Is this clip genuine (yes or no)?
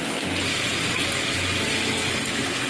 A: yes